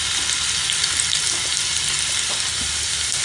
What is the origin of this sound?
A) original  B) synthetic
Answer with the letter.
A